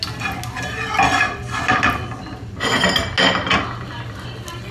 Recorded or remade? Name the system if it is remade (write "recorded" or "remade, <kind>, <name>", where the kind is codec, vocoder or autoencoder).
recorded